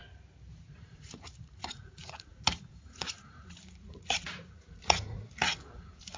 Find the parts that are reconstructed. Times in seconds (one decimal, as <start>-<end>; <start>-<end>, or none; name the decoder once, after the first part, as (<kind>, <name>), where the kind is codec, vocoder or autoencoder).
0.6-6.2 (vocoder, Vocos)